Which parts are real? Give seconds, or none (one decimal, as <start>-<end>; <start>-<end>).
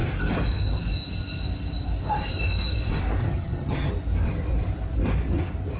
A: 0.0-3.2; 3.9-5.8